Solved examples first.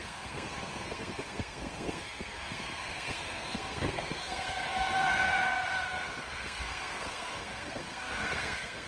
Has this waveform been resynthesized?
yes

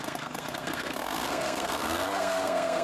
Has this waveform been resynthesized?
yes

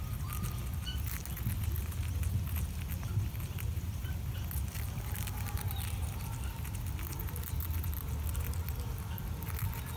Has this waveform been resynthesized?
no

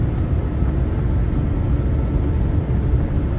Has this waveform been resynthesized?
no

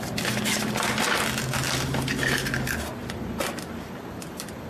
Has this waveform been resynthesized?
no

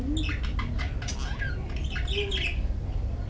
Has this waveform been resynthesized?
no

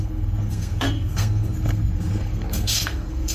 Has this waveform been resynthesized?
yes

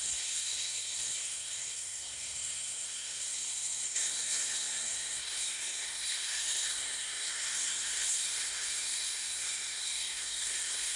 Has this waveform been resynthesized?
yes